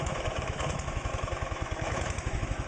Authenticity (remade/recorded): remade